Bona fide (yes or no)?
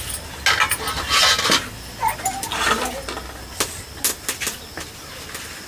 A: yes